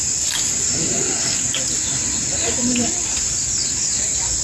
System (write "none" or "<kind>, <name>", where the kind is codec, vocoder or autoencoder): vocoder, BigVGAN v2